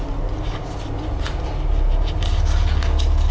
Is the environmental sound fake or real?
real